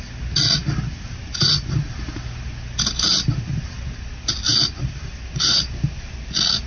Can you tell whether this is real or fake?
real